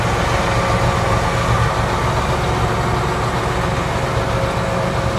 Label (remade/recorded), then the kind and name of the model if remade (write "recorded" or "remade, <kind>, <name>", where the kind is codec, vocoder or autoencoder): recorded